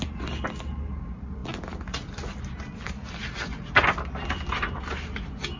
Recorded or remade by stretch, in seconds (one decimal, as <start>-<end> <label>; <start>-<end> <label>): 0.0-5.6 recorded